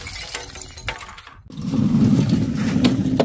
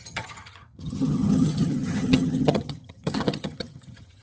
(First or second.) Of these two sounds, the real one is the first